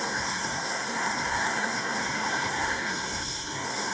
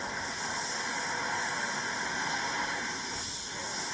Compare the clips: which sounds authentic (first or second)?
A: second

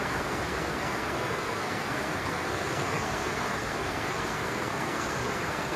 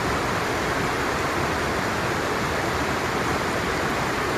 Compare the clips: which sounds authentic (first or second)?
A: second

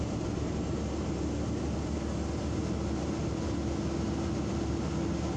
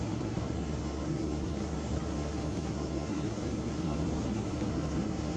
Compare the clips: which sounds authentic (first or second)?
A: first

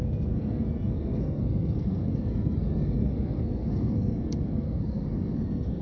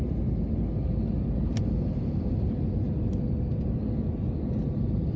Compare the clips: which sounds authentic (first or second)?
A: second